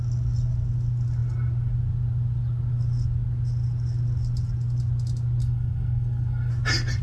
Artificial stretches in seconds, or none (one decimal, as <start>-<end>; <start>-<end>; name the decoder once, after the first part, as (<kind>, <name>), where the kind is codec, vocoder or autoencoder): 5.4-6.5 (codec, SNAC)